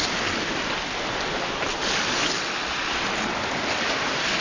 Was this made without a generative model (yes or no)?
yes